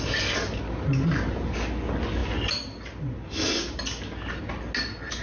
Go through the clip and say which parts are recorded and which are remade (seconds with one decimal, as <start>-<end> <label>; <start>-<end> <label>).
0.0-5.2 recorded